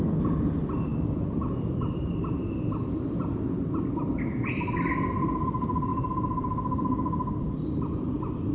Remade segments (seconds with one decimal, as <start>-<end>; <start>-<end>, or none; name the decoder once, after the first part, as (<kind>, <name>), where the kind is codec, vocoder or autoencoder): none